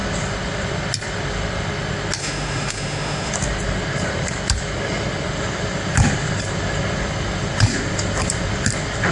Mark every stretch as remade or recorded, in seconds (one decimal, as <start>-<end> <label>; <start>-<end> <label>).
0.0-2.2 recorded; 2.2-3.3 remade; 3.3-9.1 recorded